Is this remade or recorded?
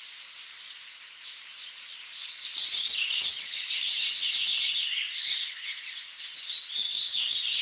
remade